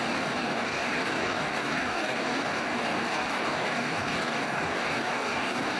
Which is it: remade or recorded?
remade